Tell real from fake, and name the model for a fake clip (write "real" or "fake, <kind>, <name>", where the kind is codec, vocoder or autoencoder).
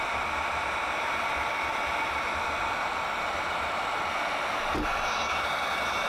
fake, vocoder, BigVGAN v2